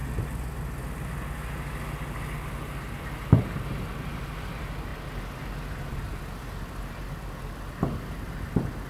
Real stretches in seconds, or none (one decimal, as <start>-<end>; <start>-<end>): 0.0-8.9